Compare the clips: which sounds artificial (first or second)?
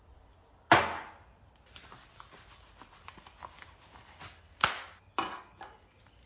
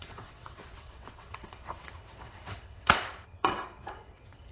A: second